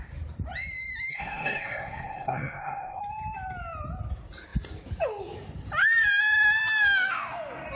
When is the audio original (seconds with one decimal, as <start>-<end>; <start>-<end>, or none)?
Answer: 0.0-1.1; 3.0-7.8